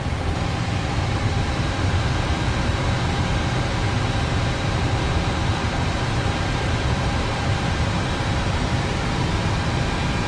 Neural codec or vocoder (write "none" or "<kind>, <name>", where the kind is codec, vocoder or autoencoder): vocoder, BigVGAN v2